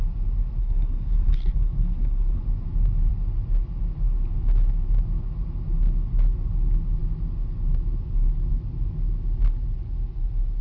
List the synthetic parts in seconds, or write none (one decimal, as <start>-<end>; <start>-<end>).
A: 0.6-2.4